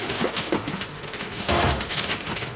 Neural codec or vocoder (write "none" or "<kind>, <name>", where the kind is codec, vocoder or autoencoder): autoencoder, DAC-VAE